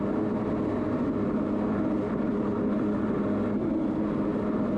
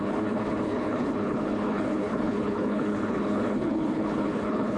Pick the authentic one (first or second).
first